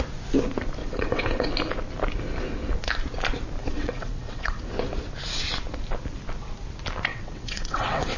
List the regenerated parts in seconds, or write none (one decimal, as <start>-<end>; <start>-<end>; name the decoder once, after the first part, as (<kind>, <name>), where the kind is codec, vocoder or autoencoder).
0.8-1.5 (vocoder, WaveNeXt); 3.6-4.6; 7.1-8.2